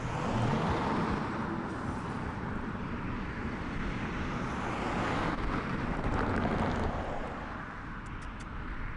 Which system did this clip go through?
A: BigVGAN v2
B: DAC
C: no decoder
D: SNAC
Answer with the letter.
C